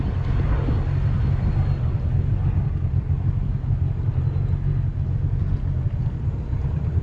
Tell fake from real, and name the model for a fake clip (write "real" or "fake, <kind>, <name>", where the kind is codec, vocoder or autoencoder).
real